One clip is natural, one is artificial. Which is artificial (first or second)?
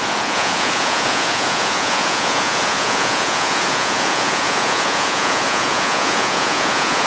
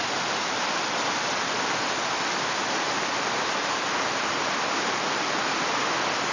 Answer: first